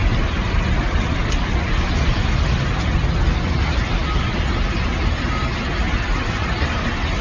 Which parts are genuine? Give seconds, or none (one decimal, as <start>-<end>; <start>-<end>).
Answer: 0.0-7.2